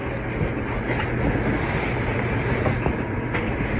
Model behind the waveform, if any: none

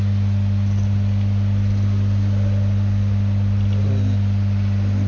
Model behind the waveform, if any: none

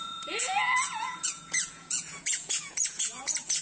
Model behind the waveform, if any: vocoder, Vocos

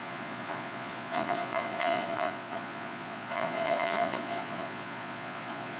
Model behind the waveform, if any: vocoder, Vocos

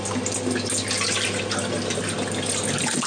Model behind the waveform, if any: none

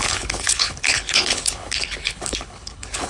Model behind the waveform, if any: codec, HILCodec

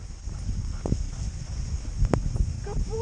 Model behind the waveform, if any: none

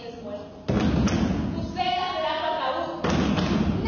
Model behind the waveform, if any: none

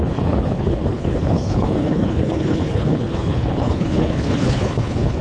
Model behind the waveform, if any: codec, HILCodec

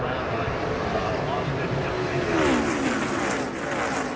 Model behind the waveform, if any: none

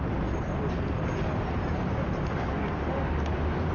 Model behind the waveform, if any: none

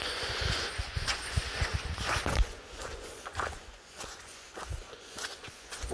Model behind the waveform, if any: vocoder, Vocos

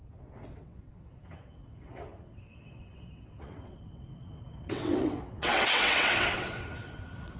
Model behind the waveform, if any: vocoder, WaveNeXt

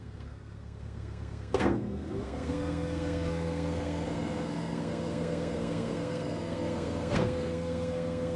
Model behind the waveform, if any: codec, SNAC